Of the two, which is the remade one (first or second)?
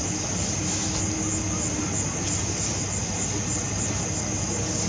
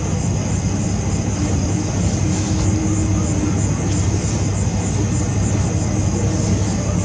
first